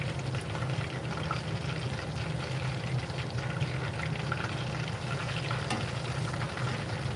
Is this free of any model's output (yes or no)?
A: yes